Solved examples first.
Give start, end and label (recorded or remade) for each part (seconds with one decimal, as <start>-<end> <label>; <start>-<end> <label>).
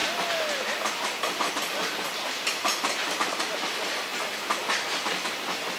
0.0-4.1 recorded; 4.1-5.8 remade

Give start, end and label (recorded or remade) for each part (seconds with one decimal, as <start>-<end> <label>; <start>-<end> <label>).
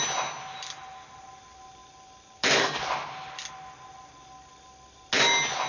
0.0-5.7 recorded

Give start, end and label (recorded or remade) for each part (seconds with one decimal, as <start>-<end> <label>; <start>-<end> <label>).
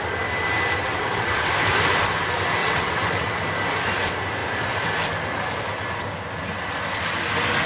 0.0-0.8 recorded; 0.8-1.5 remade; 1.5-2.6 recorded; 2.6-3.4 remade; 3.4-7.7 recorded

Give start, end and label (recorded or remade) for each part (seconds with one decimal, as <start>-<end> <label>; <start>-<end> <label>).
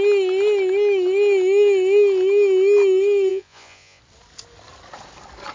0.0-3.3 recorded; 3.3-4.0 remade; 4.0-5.5 recorded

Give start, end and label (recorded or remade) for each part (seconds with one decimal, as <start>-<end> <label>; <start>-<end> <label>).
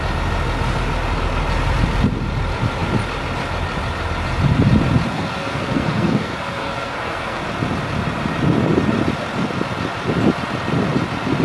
0.0-5.1 recorded; 5.1-7.4 remade; 7.4-11.4 recorded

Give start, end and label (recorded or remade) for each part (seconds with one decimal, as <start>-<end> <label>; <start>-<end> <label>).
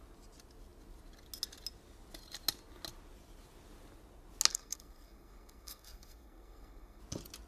0.0-4.5 recorded; 4.5-7.0 remade; 7.0-7.5 recorded